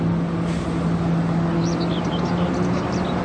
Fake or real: real